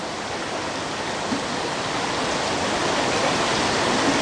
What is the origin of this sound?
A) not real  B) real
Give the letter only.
B